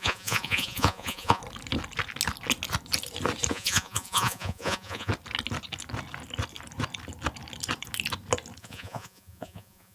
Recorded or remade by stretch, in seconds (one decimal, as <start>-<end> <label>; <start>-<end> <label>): 0.0-1.4 remade; 1.4-3.5 recorded; 3.5-5.1 remade; 5.1-8.6 recorded; 8.6-9.9 remade